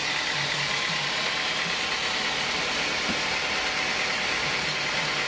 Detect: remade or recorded recorded